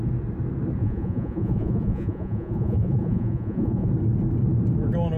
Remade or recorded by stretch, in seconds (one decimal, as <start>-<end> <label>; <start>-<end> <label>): 0.0-0.8 recorded; 0.8-3.9 remade; 3.9-5.2 recorded